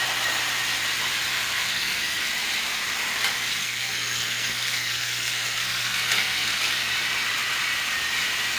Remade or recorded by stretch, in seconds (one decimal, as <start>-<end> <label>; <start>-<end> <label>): 0.0-1.3 recorded; 1.3-2.3 remade; 2.3-3.6 recorded; 3.6-6.9 remade; 6.9-8.6 recorded